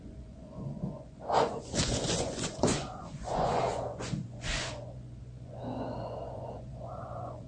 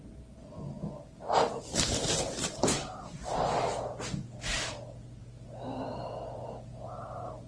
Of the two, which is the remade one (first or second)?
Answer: first